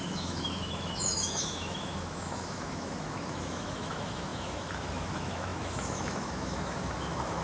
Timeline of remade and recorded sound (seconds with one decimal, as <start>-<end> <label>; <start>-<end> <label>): 0.0-7.4 remade